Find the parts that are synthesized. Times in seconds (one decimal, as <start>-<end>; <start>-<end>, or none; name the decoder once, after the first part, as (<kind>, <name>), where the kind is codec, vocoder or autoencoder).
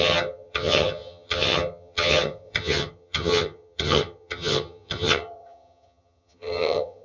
0.0-7.0 (vocoder, HiFi-GAN)